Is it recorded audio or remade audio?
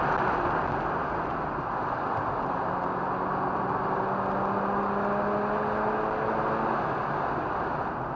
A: recorded